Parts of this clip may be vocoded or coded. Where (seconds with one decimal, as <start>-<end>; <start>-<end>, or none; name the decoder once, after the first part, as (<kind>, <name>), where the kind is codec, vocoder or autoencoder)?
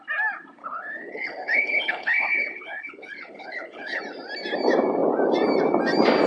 0.6-4.0 (codec, HILCodec)